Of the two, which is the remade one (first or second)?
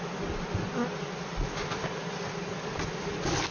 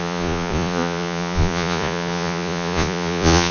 second